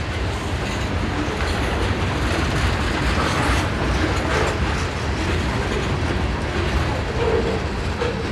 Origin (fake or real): real